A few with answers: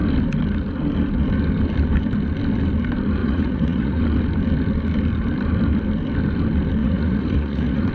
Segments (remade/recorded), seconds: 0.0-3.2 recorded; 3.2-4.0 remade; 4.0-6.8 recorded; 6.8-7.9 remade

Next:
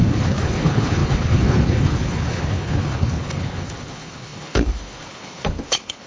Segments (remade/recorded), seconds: 0.0-6.1 remade